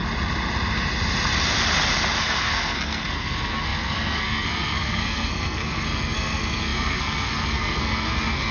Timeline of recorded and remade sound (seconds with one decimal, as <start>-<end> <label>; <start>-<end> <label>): 0.0-2.2 recorded; 2.2-8.5 remade